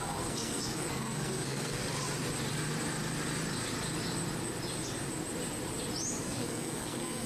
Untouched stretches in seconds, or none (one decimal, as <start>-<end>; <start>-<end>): 1.8-6.2